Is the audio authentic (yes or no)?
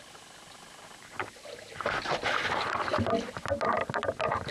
yes